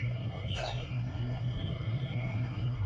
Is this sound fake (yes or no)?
yes